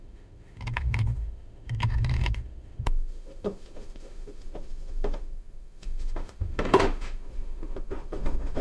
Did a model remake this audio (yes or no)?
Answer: yes